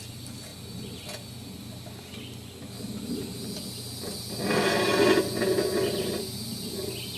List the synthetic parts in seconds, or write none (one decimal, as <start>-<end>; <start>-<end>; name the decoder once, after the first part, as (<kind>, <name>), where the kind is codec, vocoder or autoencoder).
none